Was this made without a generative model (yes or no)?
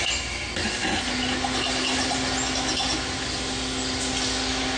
yes